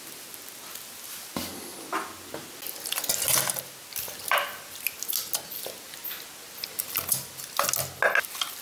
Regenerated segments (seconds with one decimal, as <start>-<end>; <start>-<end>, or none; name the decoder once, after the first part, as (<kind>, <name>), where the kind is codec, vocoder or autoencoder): none